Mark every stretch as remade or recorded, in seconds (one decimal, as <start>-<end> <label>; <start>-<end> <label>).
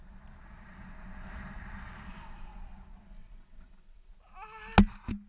0.0-2.1 recorded; 2.1-2.6 remade; 2.6-3.2 recorded; 3.2-4.1 remade; 4.1-5.3 recorded